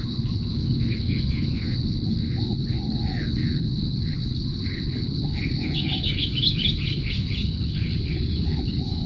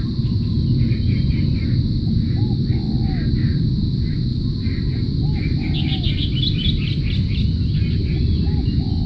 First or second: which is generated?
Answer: first